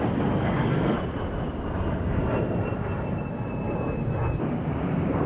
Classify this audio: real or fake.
real